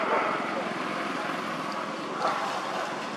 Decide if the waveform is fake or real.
real